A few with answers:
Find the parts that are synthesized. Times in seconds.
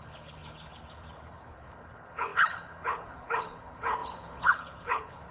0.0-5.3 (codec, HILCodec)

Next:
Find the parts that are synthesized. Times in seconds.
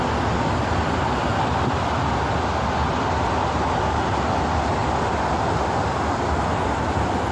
none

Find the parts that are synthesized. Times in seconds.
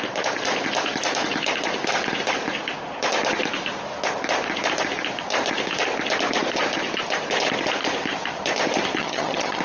9.0-9.6 (vocoder, HiFi-GAN)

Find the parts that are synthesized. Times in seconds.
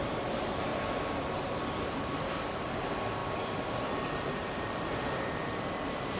0.0-0.7 (vocoder, BigVGAN v2); 1.5-3.2; 3.9-6.2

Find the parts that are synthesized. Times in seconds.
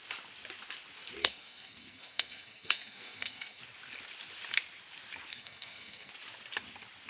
1.2-3.6 (codec, SNAC); 5.3-6.1